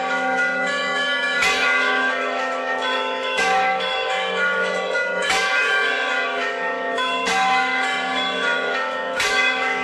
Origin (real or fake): fake